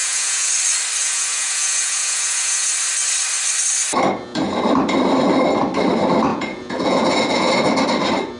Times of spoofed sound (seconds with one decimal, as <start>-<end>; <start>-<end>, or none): 0.0-0.5; 1.0-2.7; 6.3-7.5